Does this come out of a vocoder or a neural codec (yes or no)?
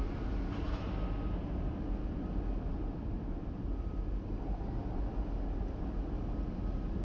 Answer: no